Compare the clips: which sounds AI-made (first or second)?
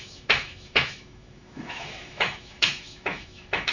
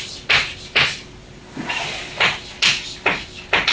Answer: first